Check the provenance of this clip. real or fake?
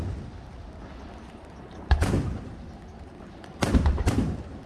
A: real